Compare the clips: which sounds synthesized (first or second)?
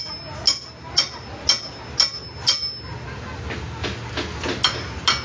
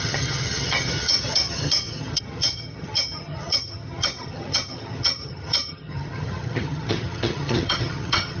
second